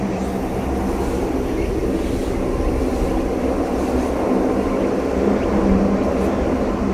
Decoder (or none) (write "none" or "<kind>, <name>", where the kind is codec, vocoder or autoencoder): none